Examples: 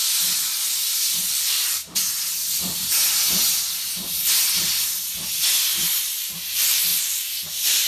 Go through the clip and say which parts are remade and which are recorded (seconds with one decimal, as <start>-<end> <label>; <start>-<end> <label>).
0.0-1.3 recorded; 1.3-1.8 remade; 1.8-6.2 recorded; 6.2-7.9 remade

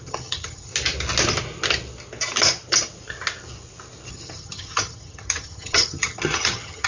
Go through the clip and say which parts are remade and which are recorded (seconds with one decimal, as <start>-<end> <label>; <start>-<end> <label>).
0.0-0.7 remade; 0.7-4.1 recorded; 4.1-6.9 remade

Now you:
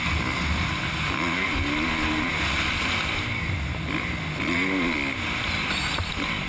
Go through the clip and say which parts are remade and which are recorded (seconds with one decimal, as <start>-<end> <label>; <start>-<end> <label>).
0.0-6.5 recorded